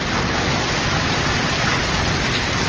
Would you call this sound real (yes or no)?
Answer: yes